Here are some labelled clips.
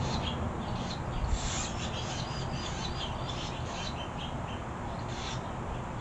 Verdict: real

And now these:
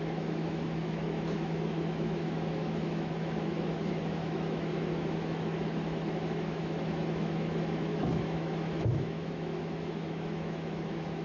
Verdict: fake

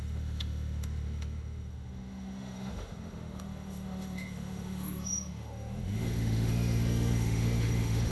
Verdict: fake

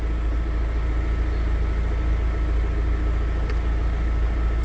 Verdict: real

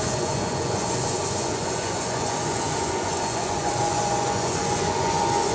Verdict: fake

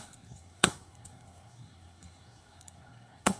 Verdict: fake